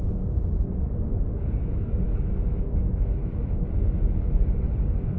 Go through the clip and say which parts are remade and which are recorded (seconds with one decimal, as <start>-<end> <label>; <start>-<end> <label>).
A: 0.0-1.3 recorded; 1.3-4.4 remade; 4.4-5.2 recorded